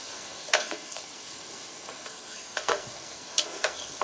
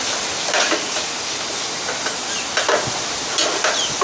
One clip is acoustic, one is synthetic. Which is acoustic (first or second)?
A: second